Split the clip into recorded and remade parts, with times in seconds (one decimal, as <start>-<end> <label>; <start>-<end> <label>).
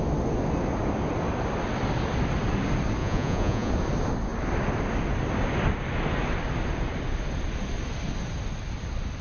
0.0-3.0 recorded; 3.0-3.7 remade; 3.7-9.2 recorded